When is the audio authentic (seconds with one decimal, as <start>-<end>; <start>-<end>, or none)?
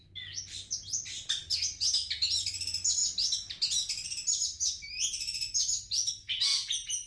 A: 0.0-7.1